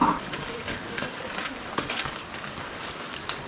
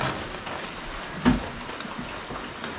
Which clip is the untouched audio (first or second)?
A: second